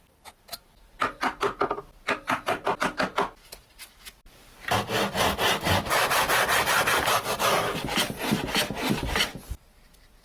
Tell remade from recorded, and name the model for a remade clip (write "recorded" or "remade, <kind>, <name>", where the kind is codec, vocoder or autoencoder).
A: recorded